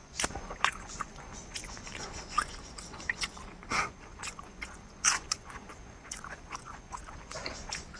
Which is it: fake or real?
fake